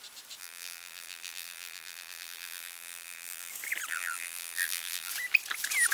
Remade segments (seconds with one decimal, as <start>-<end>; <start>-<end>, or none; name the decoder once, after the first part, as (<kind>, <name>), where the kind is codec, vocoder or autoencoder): 0.4-3.5 (vocoder, BigVGAN v2); 3.9-5.1